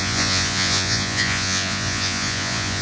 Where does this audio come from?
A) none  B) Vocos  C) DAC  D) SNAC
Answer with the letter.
B